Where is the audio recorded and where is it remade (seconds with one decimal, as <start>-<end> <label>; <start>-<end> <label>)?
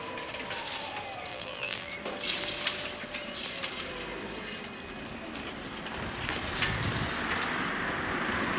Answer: 0.0-1.3 recorded; 1.3-1.9 remade; 1.9-8.6 recorded